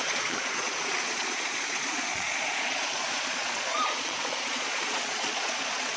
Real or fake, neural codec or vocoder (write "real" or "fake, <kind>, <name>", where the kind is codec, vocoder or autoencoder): fake, vocoder, Vocos